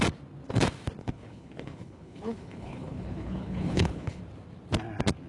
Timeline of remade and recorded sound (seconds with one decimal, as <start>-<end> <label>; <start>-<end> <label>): 0.0-1.0 recorded; 1.0-4.2 remade; 4.2-5.3 recorded